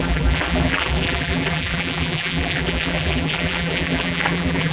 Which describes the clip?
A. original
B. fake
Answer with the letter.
B